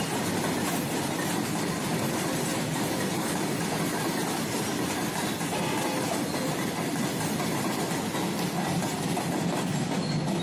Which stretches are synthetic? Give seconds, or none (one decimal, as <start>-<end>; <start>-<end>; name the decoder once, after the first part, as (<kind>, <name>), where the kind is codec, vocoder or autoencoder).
none